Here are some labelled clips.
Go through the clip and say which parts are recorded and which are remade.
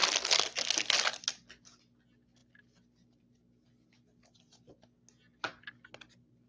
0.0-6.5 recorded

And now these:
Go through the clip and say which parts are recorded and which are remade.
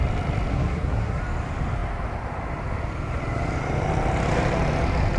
0.0-0.5 recorded; 0.5-1.2 remade; 1.2-5.2 recorded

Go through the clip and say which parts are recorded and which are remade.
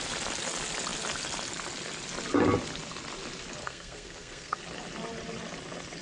0.0-3.6 recorded; 3.6-4.6 remade; 4.6-6.0 recorded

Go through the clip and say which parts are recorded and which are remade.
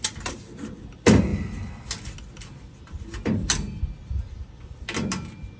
0.0-5.6 recorded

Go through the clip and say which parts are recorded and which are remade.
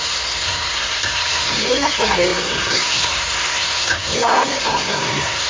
0.0-5.5 remade